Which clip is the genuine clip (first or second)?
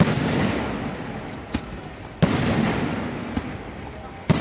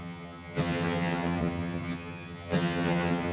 first